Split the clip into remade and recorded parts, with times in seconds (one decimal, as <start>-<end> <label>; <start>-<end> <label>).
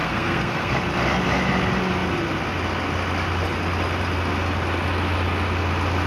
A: 0.0-0.7 remade; 0.7-6.1 recorded